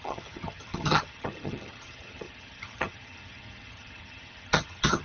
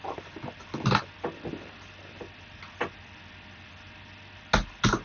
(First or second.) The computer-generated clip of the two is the first